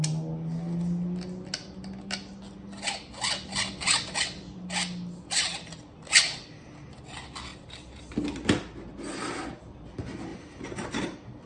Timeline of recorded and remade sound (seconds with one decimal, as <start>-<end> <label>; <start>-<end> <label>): 0.0-7.5 recorded; 7.5-8.1 remade; 8.1-10.3 recorded; 10.3-11.5 remade